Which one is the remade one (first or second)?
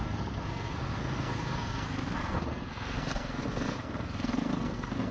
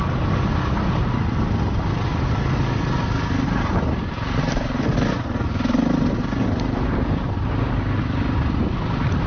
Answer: first